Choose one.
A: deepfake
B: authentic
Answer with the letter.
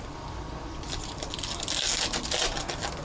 B